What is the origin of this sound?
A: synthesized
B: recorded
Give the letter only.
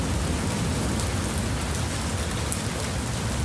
B